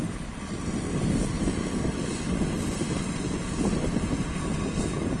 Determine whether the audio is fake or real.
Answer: real